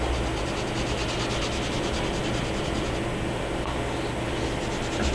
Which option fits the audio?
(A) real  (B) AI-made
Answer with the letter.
A